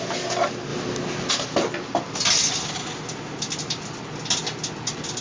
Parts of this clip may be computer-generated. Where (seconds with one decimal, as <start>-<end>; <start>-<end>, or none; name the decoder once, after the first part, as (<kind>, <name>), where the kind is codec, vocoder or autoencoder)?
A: none

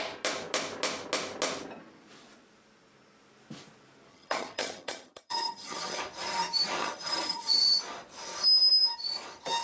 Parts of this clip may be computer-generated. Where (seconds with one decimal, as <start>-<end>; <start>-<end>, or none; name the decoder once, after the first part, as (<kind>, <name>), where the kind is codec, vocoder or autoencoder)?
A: 4.1-6.0 (vocoder, HiFi-GAN); 6.8-7.8

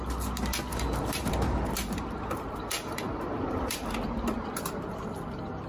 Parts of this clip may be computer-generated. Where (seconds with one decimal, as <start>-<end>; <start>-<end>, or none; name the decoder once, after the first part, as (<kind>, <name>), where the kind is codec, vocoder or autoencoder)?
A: 0.7-4.1 (vocoder, BigVGAN v2)

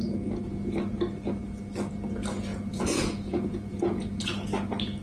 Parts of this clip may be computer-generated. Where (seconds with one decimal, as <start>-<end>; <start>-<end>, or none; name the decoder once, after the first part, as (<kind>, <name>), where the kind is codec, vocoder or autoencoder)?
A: 2.5-4.3 (vocoder, Vocos)

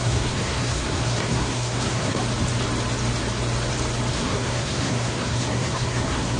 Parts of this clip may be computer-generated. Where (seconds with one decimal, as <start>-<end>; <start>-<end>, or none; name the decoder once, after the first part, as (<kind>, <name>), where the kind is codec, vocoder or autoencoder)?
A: 0.0-2.2 (codec, SNAC); 4.1-6.4